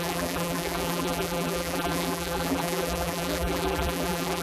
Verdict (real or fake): fake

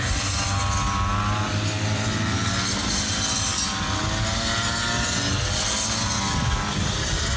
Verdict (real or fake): real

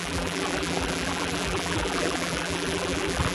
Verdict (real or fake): fake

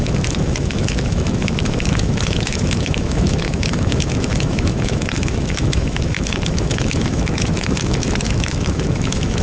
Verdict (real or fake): fake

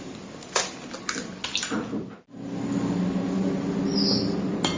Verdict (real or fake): real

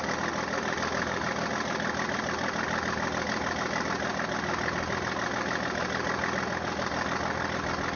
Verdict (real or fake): real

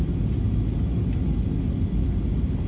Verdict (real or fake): real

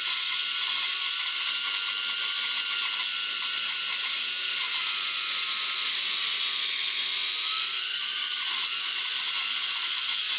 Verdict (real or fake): real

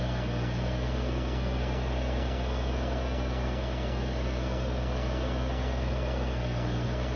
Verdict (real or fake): fake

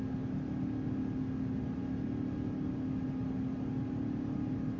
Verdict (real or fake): real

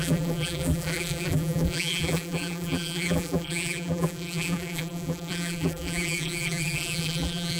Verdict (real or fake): fake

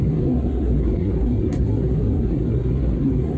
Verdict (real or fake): fake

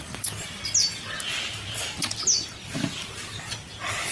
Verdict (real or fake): real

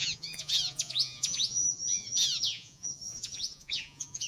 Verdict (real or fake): fake